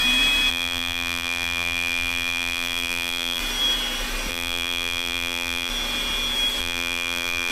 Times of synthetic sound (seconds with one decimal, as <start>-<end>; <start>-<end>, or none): 0.5-3.4; 4.3-5.7; 6.6-7.5